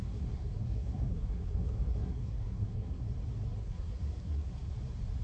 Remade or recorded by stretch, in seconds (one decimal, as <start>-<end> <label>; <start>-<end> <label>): 0.0-3.1 remade; 3.1-3.6 recorded; 3.6-4.7 remade; 4.7-5.2 recorded